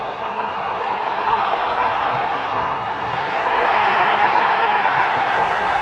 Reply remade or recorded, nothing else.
remade